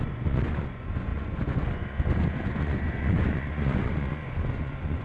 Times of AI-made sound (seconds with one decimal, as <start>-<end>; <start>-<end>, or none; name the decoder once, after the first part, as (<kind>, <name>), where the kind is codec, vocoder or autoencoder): 0.0-5.0 (vocoder, Vocos)